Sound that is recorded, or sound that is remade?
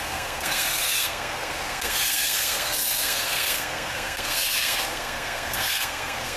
remade